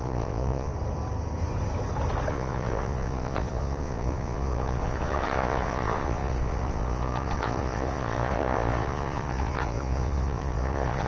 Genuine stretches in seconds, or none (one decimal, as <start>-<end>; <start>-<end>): 0.7-2.3